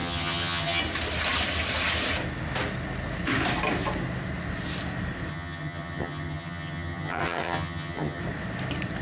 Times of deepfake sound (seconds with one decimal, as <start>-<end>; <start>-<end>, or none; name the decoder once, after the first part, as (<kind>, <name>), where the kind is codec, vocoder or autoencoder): 0.0-0.8 (vocoder, HiFi-GAN); 5.3-8.2